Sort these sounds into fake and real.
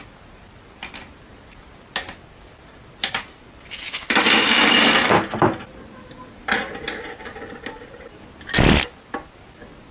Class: real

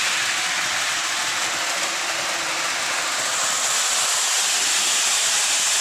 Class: real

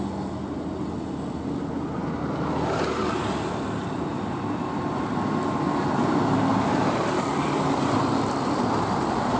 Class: real